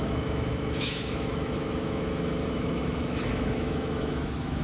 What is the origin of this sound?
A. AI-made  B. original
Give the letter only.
A